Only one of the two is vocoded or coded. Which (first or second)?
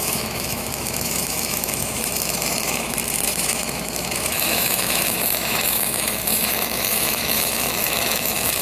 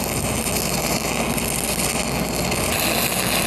first